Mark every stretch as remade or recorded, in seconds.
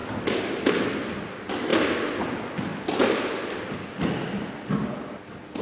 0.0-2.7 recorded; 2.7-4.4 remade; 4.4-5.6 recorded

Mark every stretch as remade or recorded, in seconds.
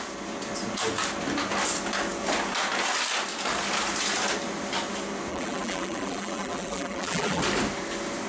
0.0-5.3 recorded; 5.3-7.4 remade; 7.4-8.3 recorded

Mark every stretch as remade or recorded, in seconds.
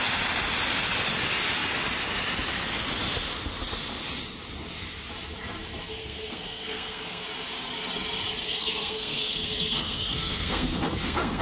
0.0-6.0 recorded; 6.0-7.2 remade; 7.2-8.4 recorded; 8.4-11.4 remade